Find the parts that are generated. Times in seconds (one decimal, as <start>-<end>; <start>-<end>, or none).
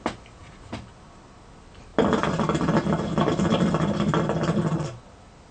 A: none